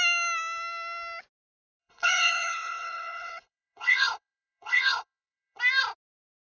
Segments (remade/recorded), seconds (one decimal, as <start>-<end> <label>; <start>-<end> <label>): 0.0-1.8 recorded; 1.8-5.6 remade; 5.6-6.4 recorded